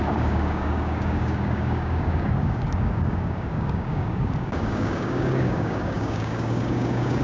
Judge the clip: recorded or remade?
remade